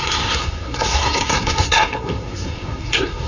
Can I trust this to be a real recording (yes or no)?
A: no